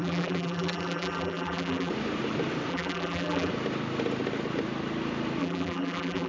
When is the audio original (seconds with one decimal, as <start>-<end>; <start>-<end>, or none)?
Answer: 1.9-2.7; 3.5-5.4